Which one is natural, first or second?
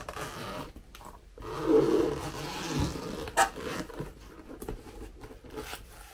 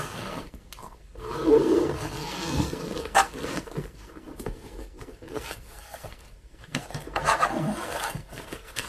first